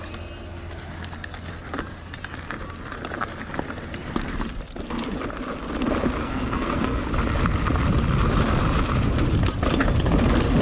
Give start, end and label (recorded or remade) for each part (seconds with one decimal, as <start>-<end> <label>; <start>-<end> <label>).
0.0-6.2 recorded; 6.2-7.0 remade; 7.0-10.6 recorded